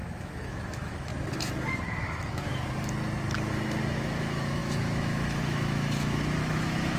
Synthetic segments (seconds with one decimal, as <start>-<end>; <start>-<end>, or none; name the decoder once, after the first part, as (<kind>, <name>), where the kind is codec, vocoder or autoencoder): 0.0-1.1 (autoencoder, DAC-VAE); 1.7-2.5; 3.5-7.0